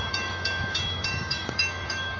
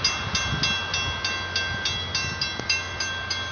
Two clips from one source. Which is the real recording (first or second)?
second